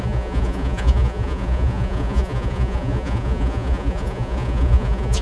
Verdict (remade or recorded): remade